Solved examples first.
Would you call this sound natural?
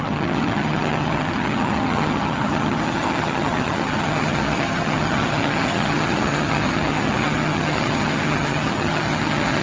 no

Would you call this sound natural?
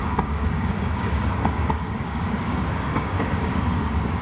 no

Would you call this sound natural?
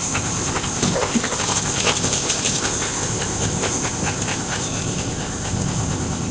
no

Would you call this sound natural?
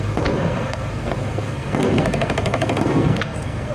no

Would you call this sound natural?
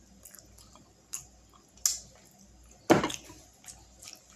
yes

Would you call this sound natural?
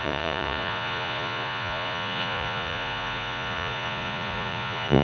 no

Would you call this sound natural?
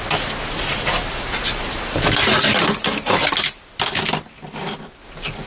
yes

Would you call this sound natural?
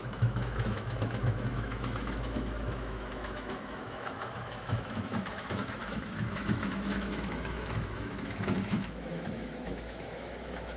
no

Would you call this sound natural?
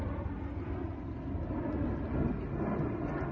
yes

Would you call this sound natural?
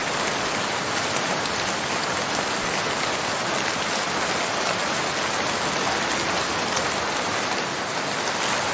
yes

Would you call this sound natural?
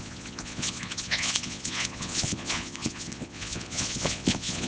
no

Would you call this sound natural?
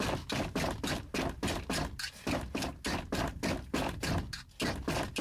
yes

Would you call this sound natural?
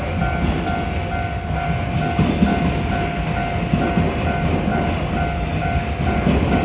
yes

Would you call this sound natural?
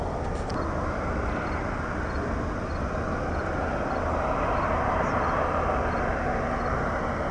yes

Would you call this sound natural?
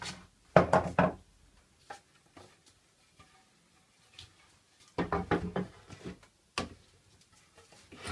yes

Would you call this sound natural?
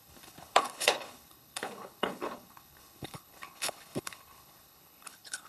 no